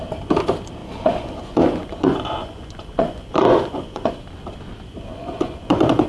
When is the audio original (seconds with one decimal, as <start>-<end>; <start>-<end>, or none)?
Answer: 0.0-0.8; 4.1-5.1